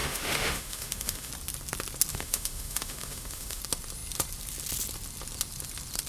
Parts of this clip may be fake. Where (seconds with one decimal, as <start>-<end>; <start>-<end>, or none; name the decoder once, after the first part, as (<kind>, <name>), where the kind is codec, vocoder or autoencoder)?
0.0-1.3 (autoencoder, DAC-VAE); 2.1-3.6